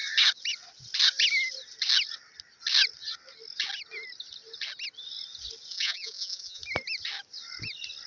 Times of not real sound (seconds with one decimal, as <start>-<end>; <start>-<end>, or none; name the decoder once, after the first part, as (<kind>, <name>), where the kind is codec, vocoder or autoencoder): 5.7-6.6 (vocoder, Vocos)